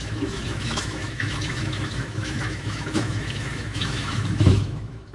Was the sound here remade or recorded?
remade